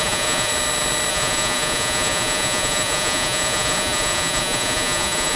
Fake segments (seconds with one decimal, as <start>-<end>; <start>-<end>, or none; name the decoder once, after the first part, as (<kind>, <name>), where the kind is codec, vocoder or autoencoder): 0.0-0.5 (vocoder, Vocos); 1.1-5.4